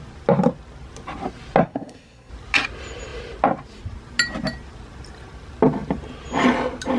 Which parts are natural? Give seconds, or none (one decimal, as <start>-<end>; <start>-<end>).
0.0-1.6; 2.3-7.0

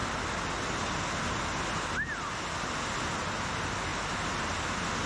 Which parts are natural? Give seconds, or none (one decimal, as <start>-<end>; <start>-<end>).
0.0-5.1

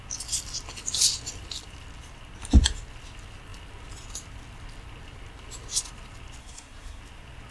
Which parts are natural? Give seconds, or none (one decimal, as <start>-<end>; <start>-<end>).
0.0-6.4; 7.0-7.5

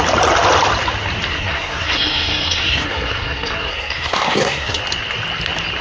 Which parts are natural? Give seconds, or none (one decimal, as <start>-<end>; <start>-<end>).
0.0-1.3; 4.8-5.8

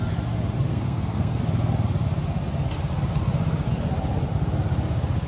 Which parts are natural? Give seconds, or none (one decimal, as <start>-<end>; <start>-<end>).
0.0-0.7; 1.4-5.3